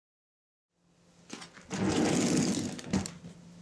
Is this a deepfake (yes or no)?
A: no